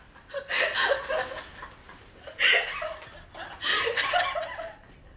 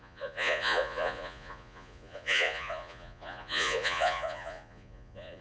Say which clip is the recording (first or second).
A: first